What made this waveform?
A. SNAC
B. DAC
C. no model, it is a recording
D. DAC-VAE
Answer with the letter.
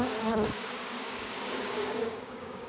B